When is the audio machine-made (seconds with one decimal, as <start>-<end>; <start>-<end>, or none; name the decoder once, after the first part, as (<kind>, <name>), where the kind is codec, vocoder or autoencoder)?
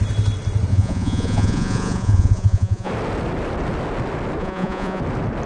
0.7-2.9 (vocoder, Vocos); 4.4-5.0